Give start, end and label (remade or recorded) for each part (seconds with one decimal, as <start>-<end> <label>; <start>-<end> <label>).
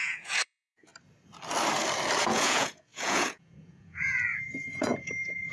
0.0-0.9 remade; 0.9-2.2 recorded; 2.2-5.5 remade